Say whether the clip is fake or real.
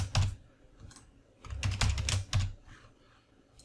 real